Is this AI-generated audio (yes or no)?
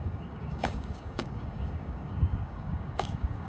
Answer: yes